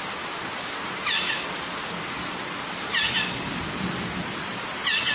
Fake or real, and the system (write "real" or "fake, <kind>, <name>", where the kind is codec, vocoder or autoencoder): real